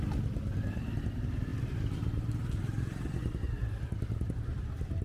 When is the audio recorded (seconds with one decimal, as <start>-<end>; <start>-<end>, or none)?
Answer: 0.0-5.0